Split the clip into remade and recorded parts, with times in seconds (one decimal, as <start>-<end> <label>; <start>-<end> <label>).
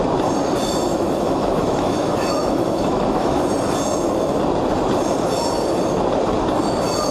0.0-0.9 recorded; 0.9-3.4 remade; 3.4-7.1 recorded